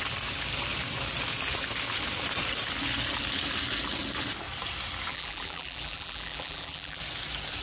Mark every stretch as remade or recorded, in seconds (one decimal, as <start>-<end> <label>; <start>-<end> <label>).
0.0-5.1 recorded; 5.1-7.0 remade; 7.0-7.6 recorded